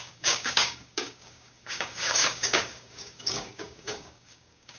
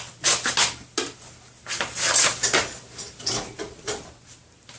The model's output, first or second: first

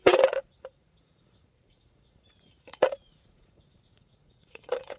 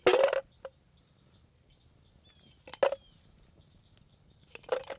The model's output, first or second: first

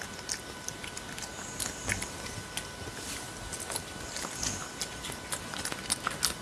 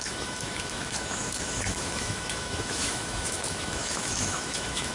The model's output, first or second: second